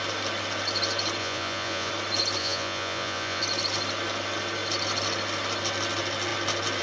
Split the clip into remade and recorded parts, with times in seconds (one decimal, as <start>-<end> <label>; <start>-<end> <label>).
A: 0.0-1.2 recorded; 1.2-1.9 remade; 1.9-2.4 recorded; 2.4-3.4 remade; 3.4-6.8 recorded